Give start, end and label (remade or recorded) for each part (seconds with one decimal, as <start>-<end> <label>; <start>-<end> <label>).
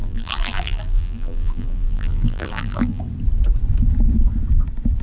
0.0-3.0 remade; 3.0-5.0 recorded